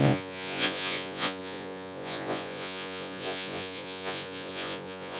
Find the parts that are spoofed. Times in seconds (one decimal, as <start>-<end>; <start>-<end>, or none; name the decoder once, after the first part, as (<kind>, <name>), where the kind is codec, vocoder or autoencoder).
0.0-5.2 (vocoder, Vocos)